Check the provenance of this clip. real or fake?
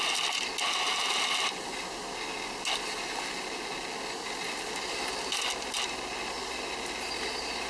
real